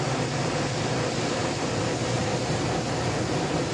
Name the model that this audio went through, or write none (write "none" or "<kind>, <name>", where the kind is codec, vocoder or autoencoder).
none